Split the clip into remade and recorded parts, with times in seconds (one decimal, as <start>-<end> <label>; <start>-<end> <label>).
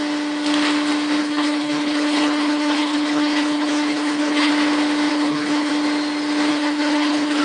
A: 0.0-1.2 recorded; 1.2-4.5 remade; 4.5-5.1 recorded; 5.1-5.7 remade; 5.7-6.5 recorded; 6.5-7.4 remade